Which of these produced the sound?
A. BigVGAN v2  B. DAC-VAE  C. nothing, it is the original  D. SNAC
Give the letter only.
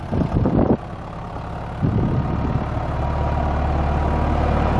C